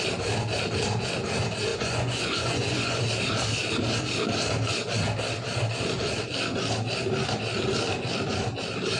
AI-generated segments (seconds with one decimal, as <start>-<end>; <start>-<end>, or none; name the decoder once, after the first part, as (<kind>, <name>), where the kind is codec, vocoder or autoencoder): 1.7-3.0 (vocoder, Vocos)